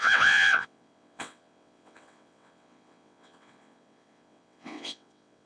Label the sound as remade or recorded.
remade